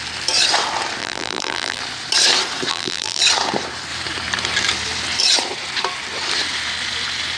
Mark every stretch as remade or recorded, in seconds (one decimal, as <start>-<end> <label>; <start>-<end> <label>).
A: 0.0-1.0 recorded; 1.0-1.8 remade; 1.8-2.7 recorded; 2.7-3.2 remade; 3.2-7.4 recorded